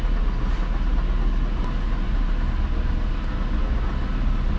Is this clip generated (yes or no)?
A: no